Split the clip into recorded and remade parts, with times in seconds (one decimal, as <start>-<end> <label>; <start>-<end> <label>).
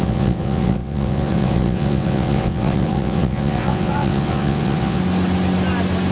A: 0.0-5.0 remade; 5.0-6.1 recorded